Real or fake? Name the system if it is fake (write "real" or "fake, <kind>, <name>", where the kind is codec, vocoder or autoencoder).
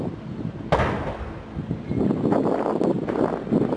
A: real